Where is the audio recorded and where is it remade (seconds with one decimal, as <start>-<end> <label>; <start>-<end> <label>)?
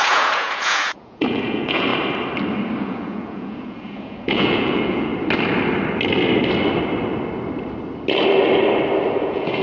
0.0-1.9 remade; 1.9-2.8 recorded; 2.8-5.1 remade; 5.1-9.2 recorded; 9.2-9.6 remade